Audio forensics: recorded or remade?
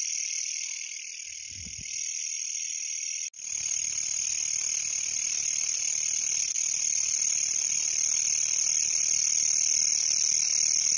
recorded